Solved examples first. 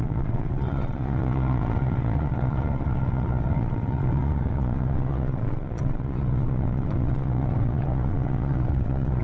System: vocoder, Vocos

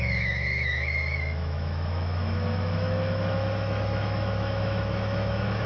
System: autoencoder, DAC-VAE